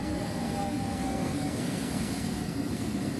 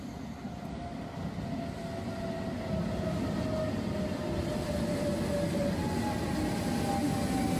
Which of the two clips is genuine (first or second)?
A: second